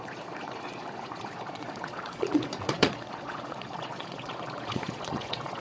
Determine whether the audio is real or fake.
fake